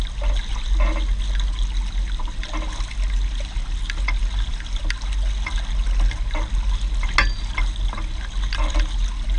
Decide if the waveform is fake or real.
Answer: real